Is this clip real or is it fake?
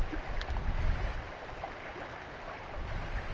real